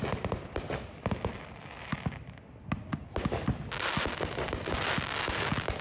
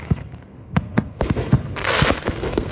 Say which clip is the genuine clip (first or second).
first